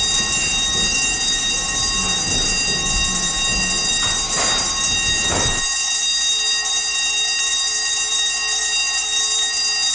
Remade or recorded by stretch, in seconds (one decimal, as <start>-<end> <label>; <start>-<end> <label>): 0.0-9.9 recorded